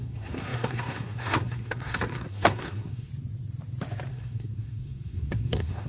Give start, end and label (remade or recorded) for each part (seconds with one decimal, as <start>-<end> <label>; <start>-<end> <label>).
0.0-3.1 remade; 3.1-4.1 recorded; 4.1-5.9 remade